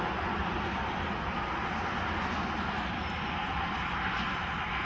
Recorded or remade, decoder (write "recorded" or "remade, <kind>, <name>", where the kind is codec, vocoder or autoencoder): recorded